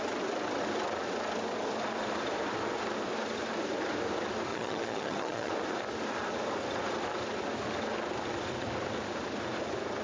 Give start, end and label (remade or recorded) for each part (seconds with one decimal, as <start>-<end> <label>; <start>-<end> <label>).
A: 0.0-4.5 recorded; 4.5-5.5 remade; 5.5-10.0 recorded